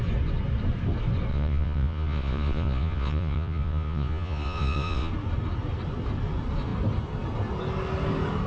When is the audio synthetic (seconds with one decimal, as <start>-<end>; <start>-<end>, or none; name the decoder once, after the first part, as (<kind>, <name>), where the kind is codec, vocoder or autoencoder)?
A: 1.3-5.1 (vocoder, Vocos)